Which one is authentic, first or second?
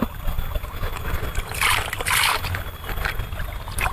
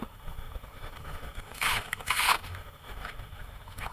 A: first